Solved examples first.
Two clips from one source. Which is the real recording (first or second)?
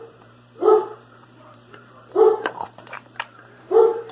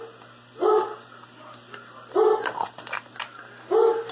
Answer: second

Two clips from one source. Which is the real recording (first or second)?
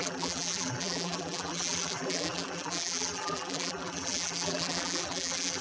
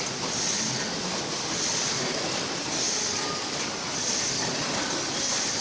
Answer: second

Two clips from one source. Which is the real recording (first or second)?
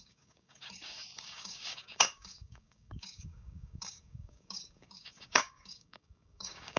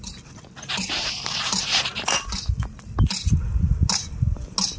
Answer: second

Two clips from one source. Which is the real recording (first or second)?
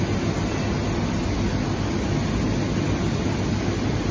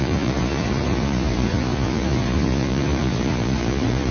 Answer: first